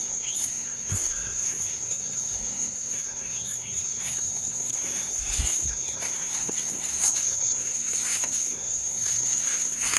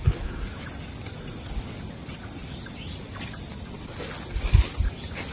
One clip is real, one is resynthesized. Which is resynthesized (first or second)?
first